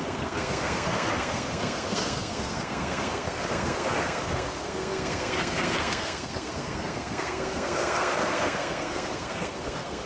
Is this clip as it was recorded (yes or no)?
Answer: no